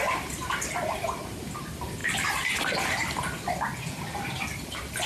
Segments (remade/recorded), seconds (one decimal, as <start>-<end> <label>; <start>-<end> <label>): 0.0-5.1 recorded

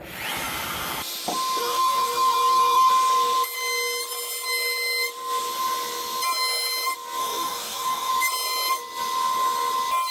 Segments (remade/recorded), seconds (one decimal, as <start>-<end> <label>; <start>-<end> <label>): 0.0-1.6 recorded; 1.6-2.9 remade; 2.9-7.2 recorded; 7.2-8.1 remade; 8.1-10.1 recorded

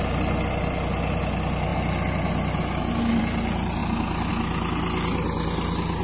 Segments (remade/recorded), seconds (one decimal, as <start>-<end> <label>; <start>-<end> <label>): 0.0-6.0 recorded

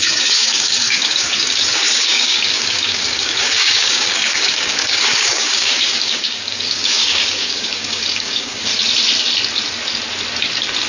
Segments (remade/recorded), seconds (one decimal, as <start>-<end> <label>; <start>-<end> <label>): 0.0-8.7 remade; 8.7-10.9 recorded

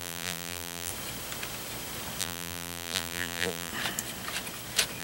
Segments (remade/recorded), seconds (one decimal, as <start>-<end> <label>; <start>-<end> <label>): 0.0-0.9 remade; 0.9-2.2 recorded; 2.2-3.7 remade; 3.7-5.0 recorded

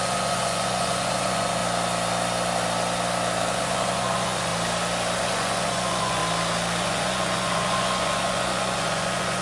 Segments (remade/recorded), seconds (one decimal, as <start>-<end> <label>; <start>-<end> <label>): 0.0-1.6 remade; 1.6-3.5 recorded; 3.5-4.5 remade; 4.5-5.2 recorded; 5.2-6.2 remade; 6.2-6.8 recorded; 6.8-9.4 remade

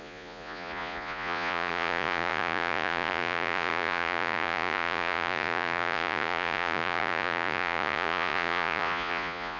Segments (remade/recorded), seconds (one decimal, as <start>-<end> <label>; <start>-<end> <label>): 0.0-9.6 remade